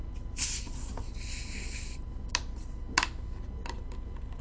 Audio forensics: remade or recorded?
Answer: recorded